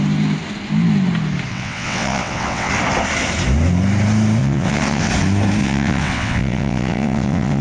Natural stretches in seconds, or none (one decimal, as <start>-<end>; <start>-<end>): 0.0-1.5; 2.7-4.4; 5.1-5.6